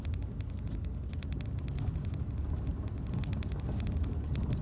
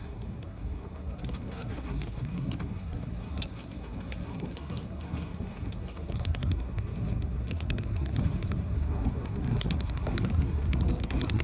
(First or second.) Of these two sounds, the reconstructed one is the second